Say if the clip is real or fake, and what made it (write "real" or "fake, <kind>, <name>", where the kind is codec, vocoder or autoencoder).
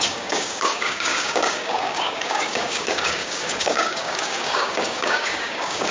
fake, codec, DAC